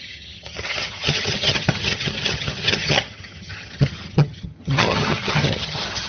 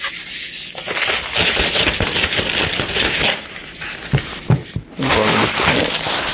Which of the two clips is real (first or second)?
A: second